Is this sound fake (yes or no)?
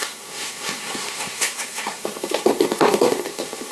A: yes